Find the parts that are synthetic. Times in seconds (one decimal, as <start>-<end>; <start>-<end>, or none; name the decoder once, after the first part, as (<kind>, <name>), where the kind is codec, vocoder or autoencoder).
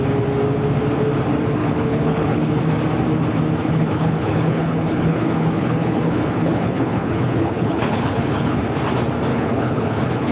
1.6-2.5 (codec, HILCodec); 3.6-8.6; 9.3-10.3